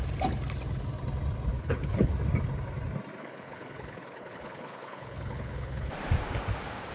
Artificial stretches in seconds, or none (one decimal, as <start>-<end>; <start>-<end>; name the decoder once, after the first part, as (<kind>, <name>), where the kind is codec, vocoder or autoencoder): 1.5-2.1 (codec, HILCodec); 3.2-5.9